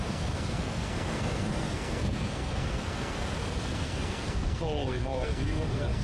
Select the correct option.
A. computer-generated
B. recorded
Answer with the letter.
A